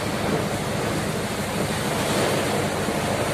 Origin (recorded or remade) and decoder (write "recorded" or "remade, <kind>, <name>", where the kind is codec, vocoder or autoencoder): recorded